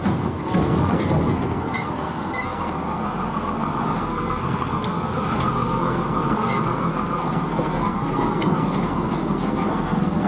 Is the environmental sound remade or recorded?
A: remade